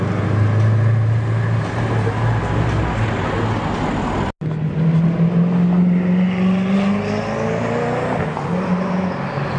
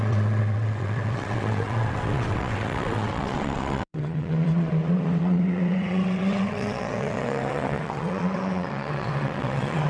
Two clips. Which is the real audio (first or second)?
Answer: first